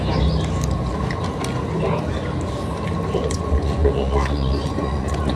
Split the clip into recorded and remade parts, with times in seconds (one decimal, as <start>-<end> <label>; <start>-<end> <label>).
0.0-3.2 recorded; 3.2-5.4 remade

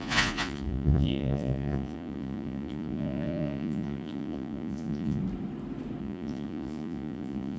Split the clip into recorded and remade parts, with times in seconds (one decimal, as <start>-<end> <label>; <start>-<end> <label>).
0.0-5.2 remade; 5.2-6.0 recorded; 6.0-7.6 remade